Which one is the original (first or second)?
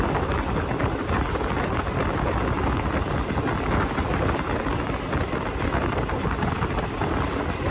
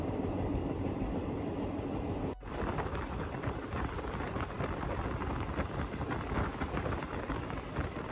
first